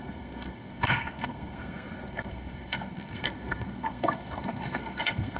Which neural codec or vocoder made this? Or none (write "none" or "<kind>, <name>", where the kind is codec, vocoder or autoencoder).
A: codec, SNAC